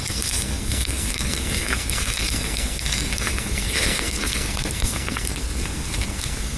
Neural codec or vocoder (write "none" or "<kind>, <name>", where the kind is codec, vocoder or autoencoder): codec, SNAC